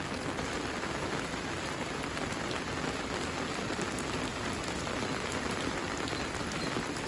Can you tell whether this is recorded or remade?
recorded